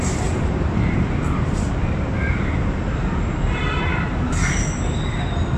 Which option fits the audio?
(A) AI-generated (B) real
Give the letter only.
A